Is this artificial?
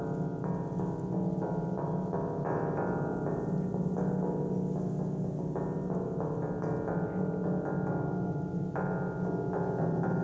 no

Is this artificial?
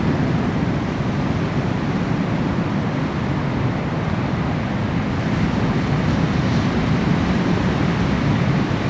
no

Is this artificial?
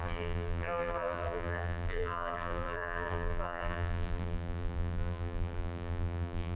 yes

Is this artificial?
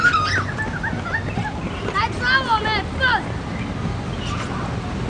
no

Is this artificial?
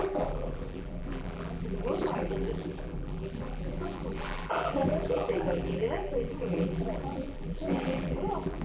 yes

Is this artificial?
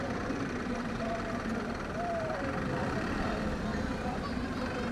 yes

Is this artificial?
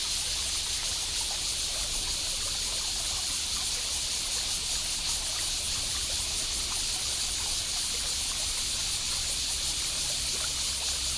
no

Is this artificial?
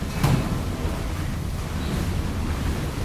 no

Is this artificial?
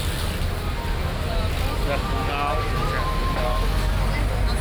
no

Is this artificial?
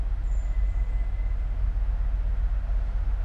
no